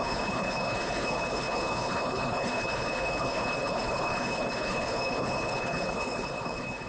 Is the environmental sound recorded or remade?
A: remade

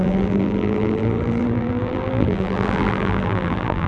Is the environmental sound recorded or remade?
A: remade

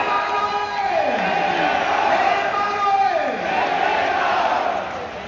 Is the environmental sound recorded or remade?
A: recorded